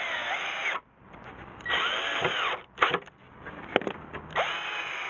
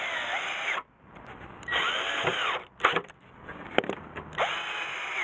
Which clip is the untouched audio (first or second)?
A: first